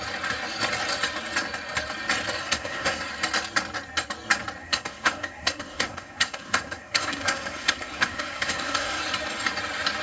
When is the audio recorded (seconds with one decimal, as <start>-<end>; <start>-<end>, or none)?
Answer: 0.0-2.4; 3.0-4.6; 9.0-10.0